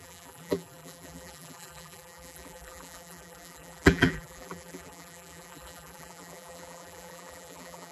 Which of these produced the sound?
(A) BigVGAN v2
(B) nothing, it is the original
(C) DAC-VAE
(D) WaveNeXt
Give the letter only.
A